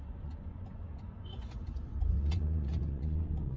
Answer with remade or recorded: remade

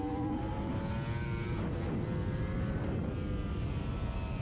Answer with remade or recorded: recorded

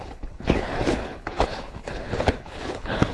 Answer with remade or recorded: remade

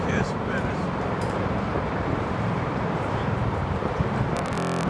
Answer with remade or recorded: remade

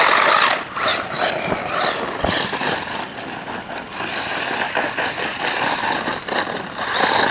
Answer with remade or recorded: recorded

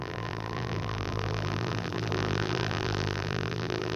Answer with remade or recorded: remade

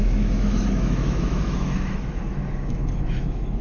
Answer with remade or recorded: remade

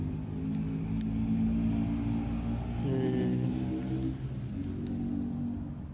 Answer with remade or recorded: recorded